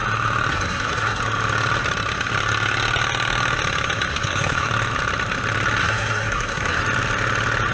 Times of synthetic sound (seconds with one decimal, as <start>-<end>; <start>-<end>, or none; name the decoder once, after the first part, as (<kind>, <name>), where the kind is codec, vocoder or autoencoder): 0.5-1.2 (codec, SNAC); 4.1-4.7; 5.8-6.8